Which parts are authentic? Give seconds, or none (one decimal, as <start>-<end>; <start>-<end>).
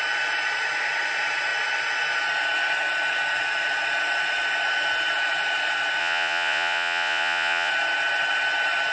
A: 0.0-6.0; 7.7-8.9